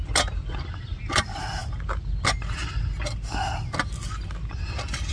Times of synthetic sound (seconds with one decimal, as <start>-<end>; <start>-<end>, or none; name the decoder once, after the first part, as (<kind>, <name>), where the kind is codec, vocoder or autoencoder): none